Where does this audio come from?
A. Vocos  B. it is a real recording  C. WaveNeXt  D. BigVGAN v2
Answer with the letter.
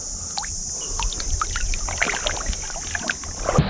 B